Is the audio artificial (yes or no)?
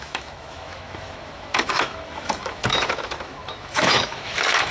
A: yes